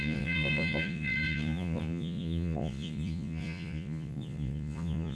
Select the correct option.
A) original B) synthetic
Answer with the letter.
B